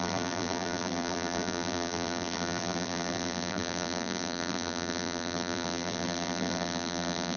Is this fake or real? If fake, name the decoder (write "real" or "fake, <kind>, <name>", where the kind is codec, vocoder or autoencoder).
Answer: fake, vocoder, BigVGAN v2